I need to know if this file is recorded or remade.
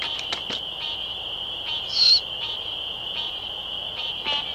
recorded